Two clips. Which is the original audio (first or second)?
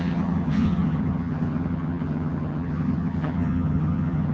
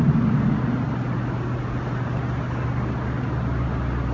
second